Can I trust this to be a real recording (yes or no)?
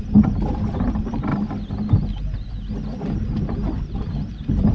yes